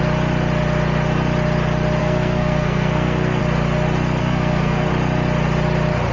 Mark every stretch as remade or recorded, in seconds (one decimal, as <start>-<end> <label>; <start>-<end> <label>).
0.0-2.0 recorded; 2.0-3.4 remade; 3.4-4.2 recorded; 4.2-4.9 remade; 4.9-6.1 recorded